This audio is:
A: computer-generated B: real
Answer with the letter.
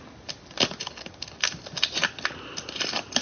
B